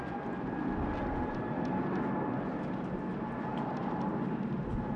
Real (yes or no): yes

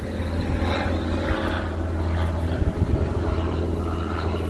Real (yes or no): yes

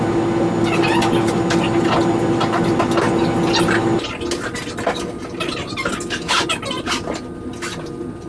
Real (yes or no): yes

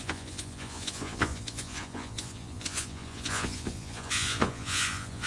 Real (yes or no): no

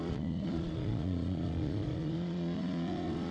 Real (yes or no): no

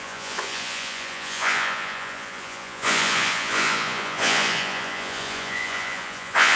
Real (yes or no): no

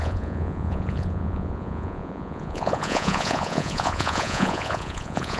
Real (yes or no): no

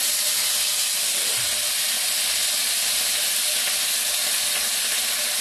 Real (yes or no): yes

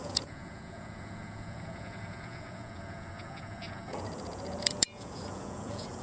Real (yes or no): no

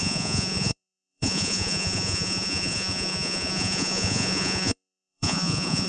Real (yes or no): no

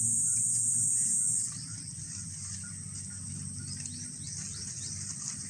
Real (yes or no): yes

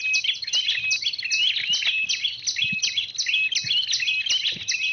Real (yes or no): yes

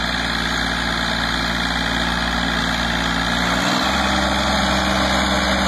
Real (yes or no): yes